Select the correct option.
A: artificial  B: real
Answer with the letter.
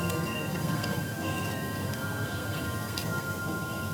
A